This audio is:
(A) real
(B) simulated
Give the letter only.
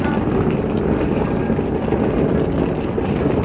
A